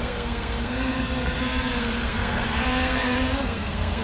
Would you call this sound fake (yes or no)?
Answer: yes